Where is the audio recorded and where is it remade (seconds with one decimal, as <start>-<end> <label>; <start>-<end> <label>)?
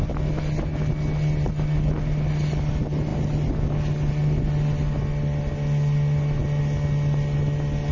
0.0-7.9 recorded